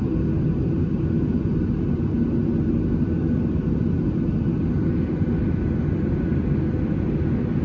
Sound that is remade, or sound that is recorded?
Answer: recorded